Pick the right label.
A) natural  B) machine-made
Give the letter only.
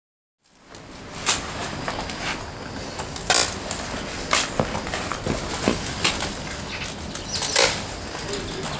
A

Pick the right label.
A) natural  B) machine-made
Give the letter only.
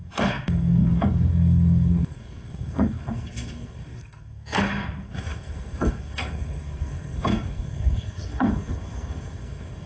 B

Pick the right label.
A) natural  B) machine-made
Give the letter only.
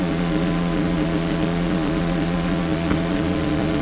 B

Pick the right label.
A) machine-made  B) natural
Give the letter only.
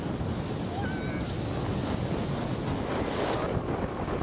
B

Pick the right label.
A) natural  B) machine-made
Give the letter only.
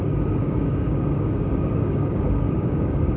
B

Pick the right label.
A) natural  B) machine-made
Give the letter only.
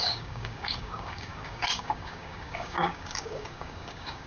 B